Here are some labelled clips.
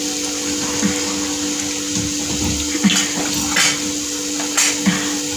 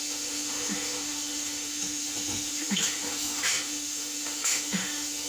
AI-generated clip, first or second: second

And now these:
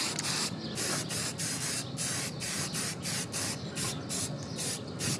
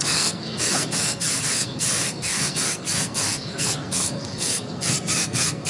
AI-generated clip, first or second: second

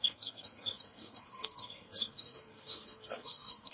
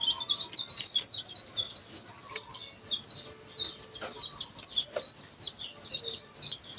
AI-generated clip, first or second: first